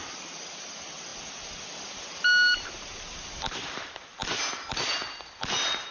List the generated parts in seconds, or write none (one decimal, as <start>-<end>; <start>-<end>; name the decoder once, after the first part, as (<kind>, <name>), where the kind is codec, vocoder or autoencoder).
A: none